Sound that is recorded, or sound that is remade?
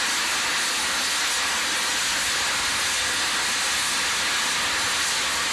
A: recorded